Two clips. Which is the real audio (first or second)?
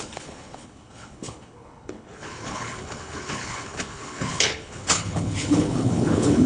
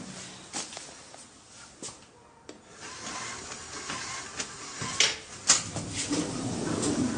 second